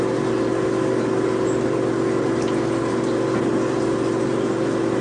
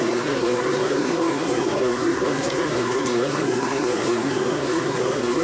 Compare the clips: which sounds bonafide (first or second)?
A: first